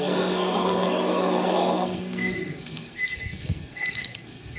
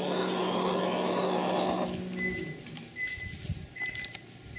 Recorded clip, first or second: second